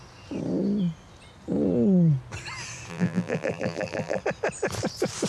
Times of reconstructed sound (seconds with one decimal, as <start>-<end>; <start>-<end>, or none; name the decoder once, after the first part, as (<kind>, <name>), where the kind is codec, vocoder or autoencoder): 2.9-4.2 (vocoder, BigVGAN v2)